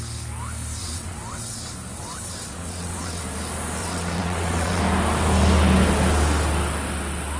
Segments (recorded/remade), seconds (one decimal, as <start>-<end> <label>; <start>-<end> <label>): 0.0-0.8 recorded; 0.8-1.6 remade; 1.6-2.0 recorded; 2.0-3.2 remade; 3.2-3.8 recorded; 3.8-4.8 remade; 4.8-7.4 recorded